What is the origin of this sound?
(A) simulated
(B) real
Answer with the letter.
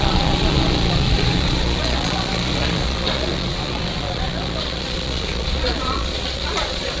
A